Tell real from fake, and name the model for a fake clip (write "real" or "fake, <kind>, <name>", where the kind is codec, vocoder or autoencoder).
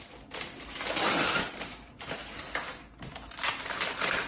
real